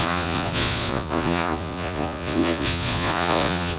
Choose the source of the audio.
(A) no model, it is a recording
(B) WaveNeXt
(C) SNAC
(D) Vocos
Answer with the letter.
D